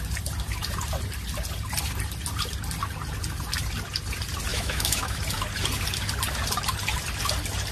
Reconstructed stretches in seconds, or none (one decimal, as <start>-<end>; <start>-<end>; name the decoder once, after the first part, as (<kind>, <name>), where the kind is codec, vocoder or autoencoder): 4.5-5.2 (autoencoder, DAC-VAE)